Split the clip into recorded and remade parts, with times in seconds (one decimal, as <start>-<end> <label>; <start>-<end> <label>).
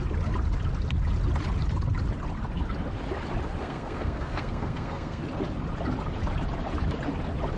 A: 0.0-3.6 recorded; 3.6-5.2 remade; 5.2-7.6 recorded